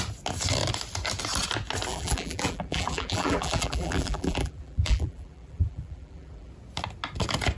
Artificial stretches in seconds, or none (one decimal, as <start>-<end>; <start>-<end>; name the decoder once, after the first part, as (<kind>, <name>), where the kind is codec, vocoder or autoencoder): 1.9-6.5 (vocoder, BigVGAN v2)